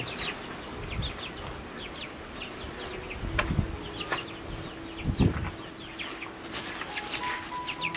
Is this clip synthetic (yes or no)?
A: no